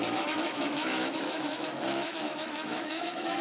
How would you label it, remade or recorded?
remade